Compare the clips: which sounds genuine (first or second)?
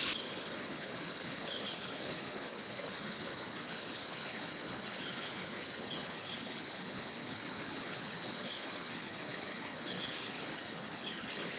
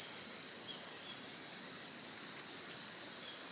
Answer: second